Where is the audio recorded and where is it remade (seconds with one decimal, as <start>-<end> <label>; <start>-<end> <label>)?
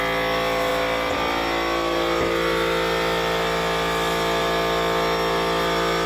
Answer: 0.0-6.1 recorded